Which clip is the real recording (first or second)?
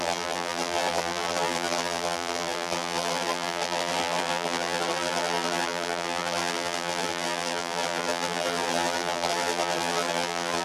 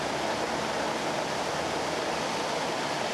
second